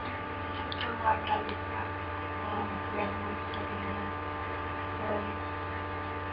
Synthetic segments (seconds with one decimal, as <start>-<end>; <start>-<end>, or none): 0.0-2.1; 2.5-3.9; 4.4-5.1